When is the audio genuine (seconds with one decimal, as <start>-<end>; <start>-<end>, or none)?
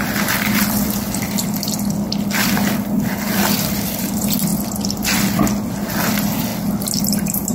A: 4.5-6.1; 6.5-7.0